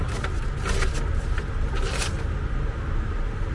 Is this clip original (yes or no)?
yes